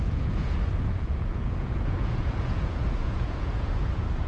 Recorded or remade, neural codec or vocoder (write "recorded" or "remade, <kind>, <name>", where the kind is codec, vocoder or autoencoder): remade, vocoder, Vocos